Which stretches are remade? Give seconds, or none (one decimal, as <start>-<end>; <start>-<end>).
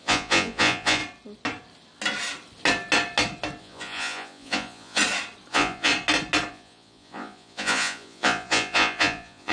0.0-1.0; 3.6-5.0; 5.5-5.9; 6.5-9.5